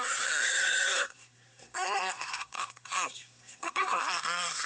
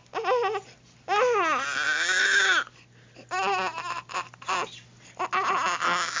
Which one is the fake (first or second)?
first